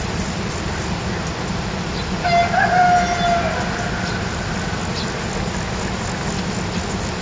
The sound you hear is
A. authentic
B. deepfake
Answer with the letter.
A